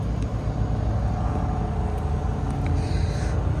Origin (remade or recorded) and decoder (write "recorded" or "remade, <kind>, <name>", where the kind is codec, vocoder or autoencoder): recorded